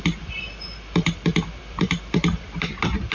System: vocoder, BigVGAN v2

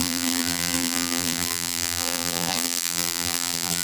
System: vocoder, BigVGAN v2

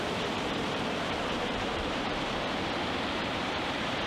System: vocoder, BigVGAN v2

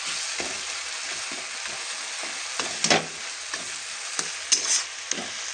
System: none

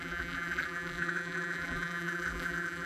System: vocoder, BigVGAN v2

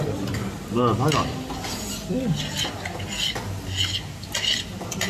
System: none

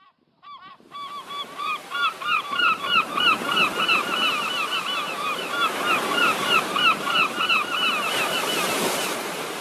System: vocoder, BigVGAN v2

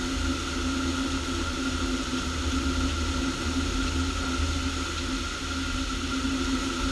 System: vocoder, BigVGAN v2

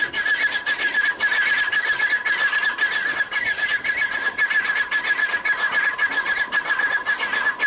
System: vocoder, BigVGAN v2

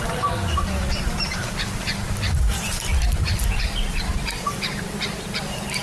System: vocoder, BigVGAN v2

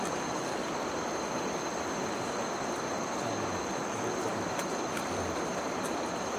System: vocoder, BigVGAN v2